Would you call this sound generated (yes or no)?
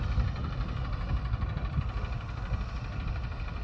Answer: no